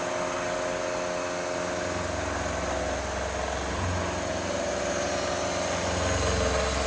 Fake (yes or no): no